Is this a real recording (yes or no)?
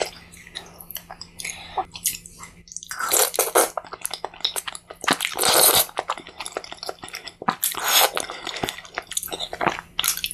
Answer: yes